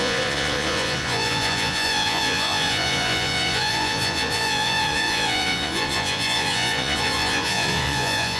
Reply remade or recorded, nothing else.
remade